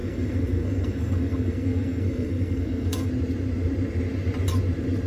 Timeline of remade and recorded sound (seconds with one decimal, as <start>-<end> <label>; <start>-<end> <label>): 0.0-3.1 remade; 3.1-5.1 recorded